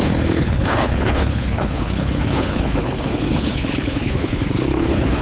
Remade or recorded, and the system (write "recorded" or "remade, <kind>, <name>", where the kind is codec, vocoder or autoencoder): remade, codec, HILCodec